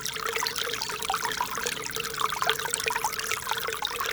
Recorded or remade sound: recorded